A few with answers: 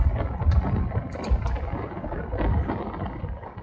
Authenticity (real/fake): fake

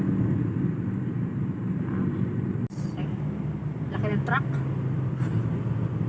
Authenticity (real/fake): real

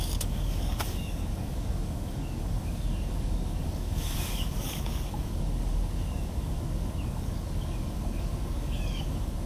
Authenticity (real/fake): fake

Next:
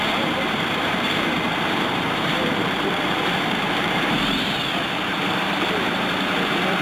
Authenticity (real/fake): fake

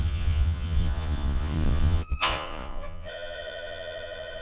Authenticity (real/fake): fake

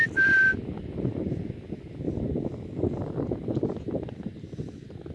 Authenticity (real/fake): real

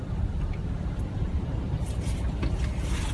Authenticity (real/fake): fake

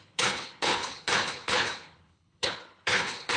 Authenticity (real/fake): fake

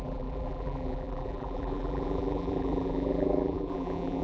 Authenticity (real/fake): fake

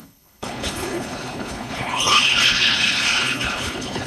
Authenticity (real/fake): fake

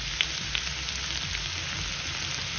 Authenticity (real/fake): real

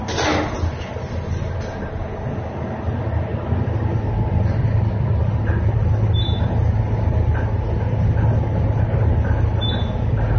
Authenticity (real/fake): real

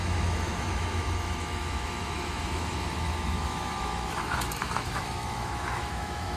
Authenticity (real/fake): fake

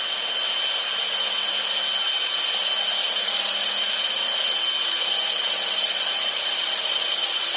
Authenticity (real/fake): real